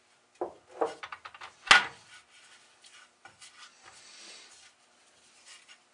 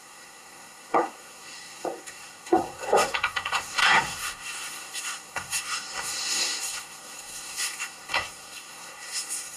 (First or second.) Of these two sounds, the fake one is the second